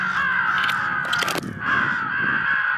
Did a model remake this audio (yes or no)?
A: no